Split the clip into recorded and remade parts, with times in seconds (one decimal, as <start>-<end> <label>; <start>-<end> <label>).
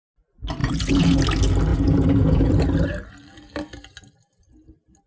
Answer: 0.0-0.6 recorded; 0.6-1.2 remade; 1.2-1.7 recorded; 1.7-2.5 remade; 2.5-5.1 recorded